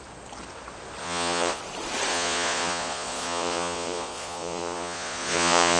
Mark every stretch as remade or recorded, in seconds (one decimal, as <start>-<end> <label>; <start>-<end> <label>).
0.0-1.0 recorded; 1.0-1.6 remade; 1.6-2.1 recorded; 2.1-5.8 remade

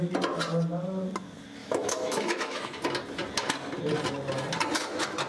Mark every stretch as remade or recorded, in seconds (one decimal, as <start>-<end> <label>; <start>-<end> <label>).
0.0-1.6 recorded; 1.6-2.8 remade; 2.8-5.3 recorded

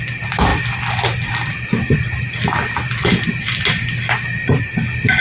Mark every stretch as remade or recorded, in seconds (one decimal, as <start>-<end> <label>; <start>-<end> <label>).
0.0-5.2 recorded

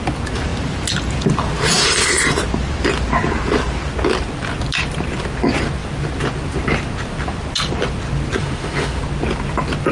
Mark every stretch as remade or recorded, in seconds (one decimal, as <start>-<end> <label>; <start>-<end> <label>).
0.0-8.4 recorded; 8.4-9.0 remade; 9.0-9.9 recorded

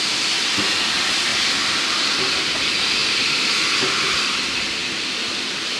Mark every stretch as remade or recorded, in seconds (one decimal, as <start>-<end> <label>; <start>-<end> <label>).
0.0-3.0 recorded; 3.0-4.2 remade; 4.2-5.8 recorded

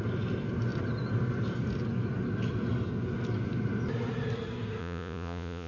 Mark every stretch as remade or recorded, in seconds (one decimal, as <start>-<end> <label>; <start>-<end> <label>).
0.0-4.8 recorded; 4.8-5.7 remade

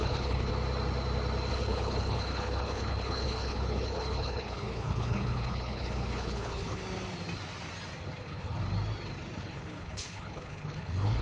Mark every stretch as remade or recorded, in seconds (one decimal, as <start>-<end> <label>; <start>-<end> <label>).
0.0-0.5 remade; 0.5-1.5 recorded; 1.5-6.8 remade; 6.8-8.2 recorded; 8.2-8.6 remade; 8.6-9.4 recorded; 9.4-11.2 remade